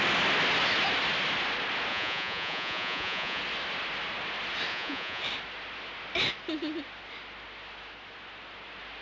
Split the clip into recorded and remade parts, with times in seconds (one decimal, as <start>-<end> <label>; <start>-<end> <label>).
0.0-1.9 recorded; 1.9-3.4 remade; 3.4-4.7 recorded; 4.7-5.2 remade; 5.2-9.0 recorded